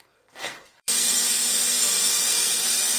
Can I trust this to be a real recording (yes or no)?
no